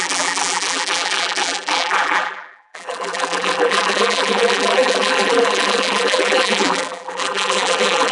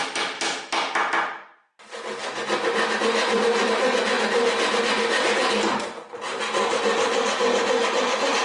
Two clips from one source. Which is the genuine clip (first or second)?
second